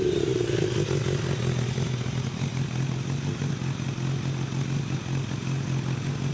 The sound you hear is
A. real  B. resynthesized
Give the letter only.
A